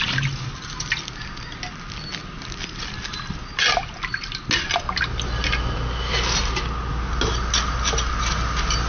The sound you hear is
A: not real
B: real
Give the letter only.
B